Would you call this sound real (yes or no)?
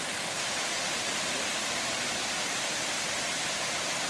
yes